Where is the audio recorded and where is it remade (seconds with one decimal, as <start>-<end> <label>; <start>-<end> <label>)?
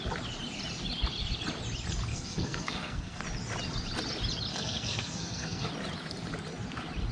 0.0-2.1 recorded; 2.1-3.2 remade; 3.2-4.5 recorded; 4.5-5.7 remade; 5.7-7.1 recorded